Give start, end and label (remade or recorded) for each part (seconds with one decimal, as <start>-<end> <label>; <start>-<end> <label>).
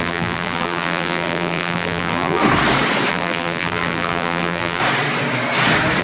0.0-2.4 remade; 2.4-3.1 recorded; 3.1-4.8 remade; 4.8-6.0 recorded